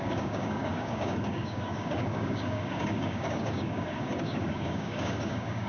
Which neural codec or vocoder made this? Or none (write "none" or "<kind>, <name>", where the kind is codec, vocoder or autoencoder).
codec, DAC